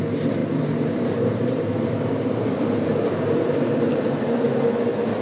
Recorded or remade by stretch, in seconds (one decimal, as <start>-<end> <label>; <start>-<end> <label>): 0.0-0.4 recorded; 0.4-3.5 remade; 3.5-5.2 recorded